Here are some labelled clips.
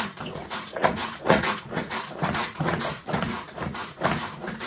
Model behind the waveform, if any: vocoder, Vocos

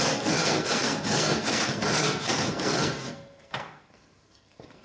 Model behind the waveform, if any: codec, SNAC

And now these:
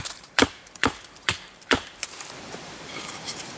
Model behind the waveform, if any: vocoder, BigVGAN v2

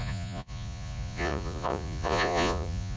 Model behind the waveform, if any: vocoder, Vocos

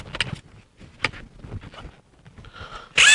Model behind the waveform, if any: none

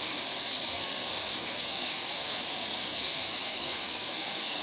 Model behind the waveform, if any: codec, SNAC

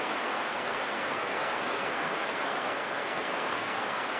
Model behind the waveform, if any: codec, SNAC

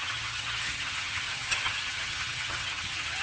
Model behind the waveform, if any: vocoder, HiFi-GAN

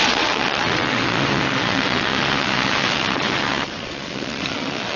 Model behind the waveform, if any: vocoder, WaveNeXt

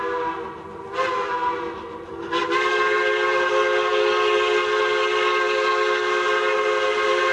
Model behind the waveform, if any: none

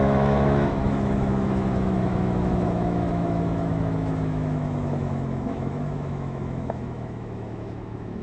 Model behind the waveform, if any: autoencoder, DAC-VAE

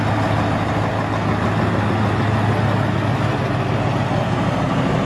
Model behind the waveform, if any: none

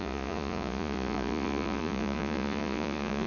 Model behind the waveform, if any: vocoder, Vocos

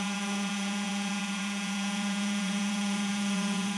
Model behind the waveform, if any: vocoder, Vocos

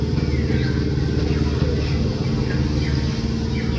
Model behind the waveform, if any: none